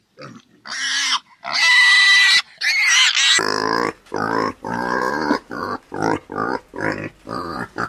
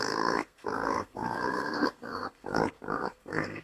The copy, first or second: second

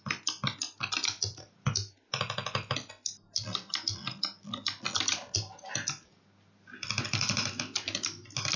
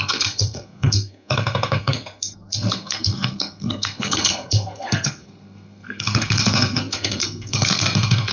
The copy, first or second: second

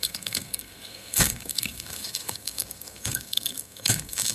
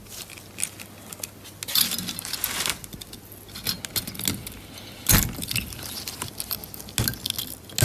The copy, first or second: first